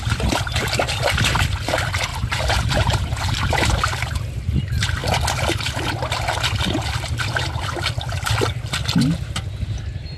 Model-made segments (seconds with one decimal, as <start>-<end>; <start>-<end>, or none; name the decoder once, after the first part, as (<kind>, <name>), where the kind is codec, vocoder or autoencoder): 2.1-3.7 (vocoder, BigVGAN v2)